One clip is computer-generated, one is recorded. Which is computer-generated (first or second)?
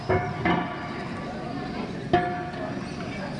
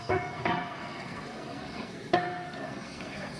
second